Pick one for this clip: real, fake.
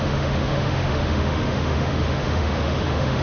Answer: fake